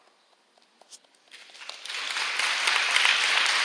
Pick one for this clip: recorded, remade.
recorded